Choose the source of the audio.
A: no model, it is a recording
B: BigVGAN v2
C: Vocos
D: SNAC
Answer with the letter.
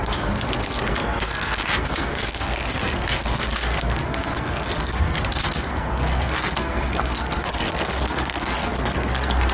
D